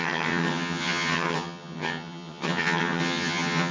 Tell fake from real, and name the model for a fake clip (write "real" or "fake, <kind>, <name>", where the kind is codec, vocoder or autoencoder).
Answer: fake, vocoder, HiFi-GAN